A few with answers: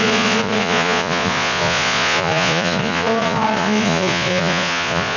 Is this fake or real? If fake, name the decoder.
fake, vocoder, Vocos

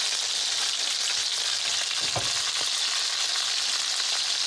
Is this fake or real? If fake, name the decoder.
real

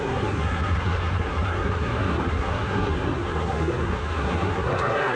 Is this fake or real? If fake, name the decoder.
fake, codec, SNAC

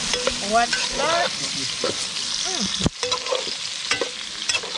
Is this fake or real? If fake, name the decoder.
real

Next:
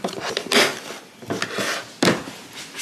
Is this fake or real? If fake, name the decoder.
real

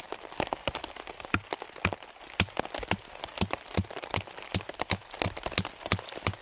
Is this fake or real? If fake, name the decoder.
real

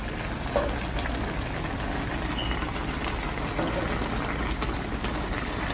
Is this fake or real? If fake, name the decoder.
real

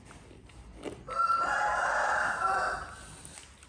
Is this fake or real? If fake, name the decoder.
fake, vocoder, BigVGAN v2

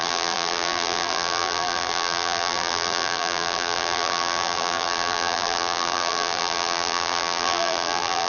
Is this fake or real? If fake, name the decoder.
fake, vocoder, BigVGAN v2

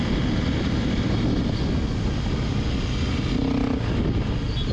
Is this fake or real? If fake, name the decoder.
real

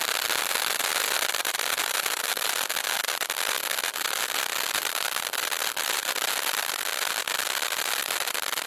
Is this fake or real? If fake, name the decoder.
real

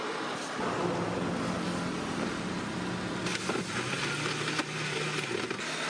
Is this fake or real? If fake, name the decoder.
real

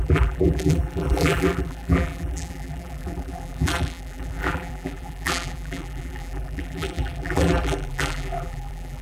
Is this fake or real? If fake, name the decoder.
fake, vocoder, BigVGAN v2